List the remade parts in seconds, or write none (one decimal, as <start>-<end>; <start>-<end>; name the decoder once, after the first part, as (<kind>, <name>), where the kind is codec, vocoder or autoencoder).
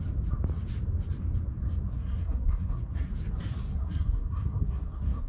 1.9-3.1 (codec, SNAC); 3.7-5.3